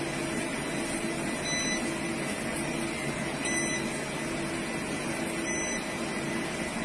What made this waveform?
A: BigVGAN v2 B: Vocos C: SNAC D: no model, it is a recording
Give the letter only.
D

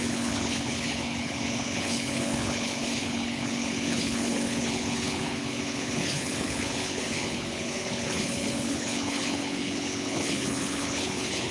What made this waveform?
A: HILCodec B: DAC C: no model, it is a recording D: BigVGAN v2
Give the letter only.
A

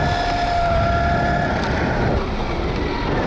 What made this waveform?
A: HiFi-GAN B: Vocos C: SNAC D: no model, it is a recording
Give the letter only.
D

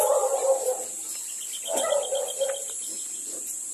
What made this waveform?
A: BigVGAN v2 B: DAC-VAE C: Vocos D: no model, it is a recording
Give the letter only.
D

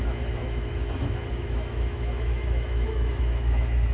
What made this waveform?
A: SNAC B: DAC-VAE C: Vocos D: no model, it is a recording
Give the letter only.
B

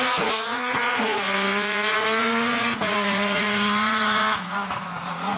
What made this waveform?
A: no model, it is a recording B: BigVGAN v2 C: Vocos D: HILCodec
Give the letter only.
C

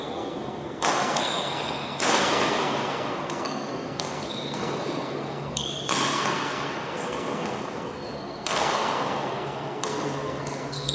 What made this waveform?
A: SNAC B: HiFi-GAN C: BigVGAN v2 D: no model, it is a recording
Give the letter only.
A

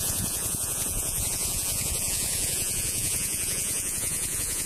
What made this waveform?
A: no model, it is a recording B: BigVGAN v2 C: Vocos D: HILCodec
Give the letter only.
C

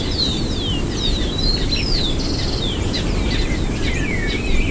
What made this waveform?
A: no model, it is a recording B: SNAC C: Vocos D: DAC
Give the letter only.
A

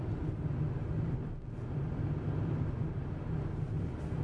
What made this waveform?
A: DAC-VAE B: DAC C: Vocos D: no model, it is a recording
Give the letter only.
D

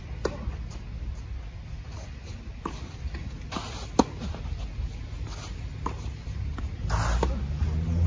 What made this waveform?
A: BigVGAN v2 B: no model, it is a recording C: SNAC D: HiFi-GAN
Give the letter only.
B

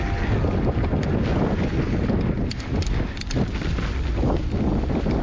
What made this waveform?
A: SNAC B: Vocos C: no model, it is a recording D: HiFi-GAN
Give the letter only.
C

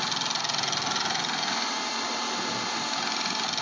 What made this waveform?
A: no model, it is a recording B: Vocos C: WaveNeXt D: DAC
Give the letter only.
A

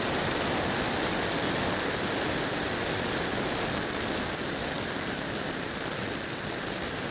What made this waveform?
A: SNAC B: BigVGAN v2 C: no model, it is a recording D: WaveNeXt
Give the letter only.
C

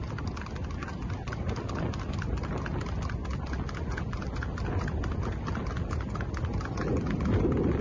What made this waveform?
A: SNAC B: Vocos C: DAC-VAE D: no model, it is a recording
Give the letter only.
D